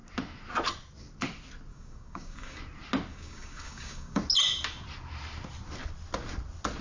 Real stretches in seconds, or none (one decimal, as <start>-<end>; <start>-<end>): 0.0-1.7; 2.6-3.1; 4.2-6.8